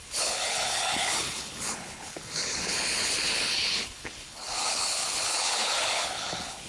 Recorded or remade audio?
remade